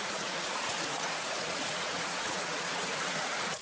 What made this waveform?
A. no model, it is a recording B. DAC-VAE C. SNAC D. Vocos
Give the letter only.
D